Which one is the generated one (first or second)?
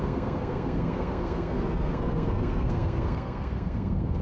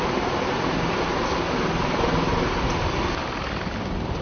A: first